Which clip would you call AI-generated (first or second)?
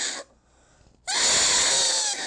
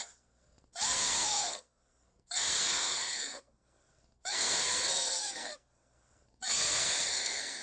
second